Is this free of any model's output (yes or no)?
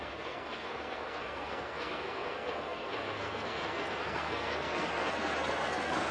no